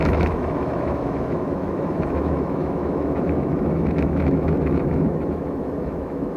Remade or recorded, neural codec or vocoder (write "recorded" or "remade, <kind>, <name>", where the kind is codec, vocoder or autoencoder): remade, autoencoder, DAC-VAE